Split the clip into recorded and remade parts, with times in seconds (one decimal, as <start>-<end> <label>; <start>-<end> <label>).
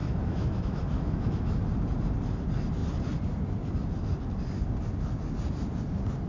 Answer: 0.0-1.6 remade; 1.6-6.3 recorded